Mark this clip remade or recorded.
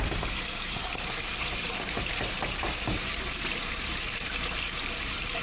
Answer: remade